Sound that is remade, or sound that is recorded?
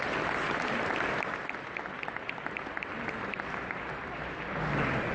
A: recorded